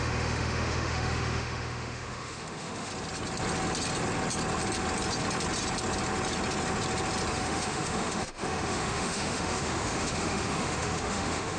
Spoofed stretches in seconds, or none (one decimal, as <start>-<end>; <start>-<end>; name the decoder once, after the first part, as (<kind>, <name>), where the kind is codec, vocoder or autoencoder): 0.0-2.9 (autoencoder, DAC-VAE); 7.3-11.6